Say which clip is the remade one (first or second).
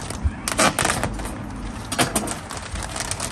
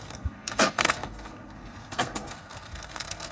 second